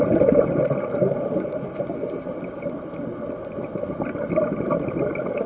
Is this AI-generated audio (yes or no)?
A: no